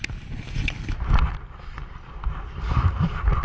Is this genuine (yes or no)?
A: yes